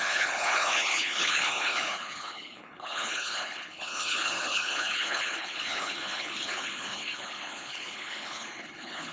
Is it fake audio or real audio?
fake